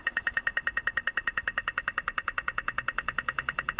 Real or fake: fake